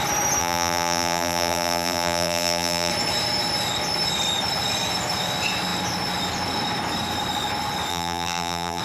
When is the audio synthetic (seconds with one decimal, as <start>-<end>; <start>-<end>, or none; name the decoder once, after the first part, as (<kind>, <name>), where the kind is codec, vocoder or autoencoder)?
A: 0.4-2.9 (vocoder, BigVGAN v2); 7.9-8.8